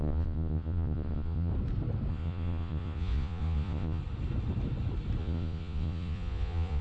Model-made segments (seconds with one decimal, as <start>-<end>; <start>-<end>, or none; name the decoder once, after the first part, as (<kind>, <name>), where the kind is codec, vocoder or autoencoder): 0.0-1.5 (vocoder, Vocos); 2.1-4.0; 5.2-6.8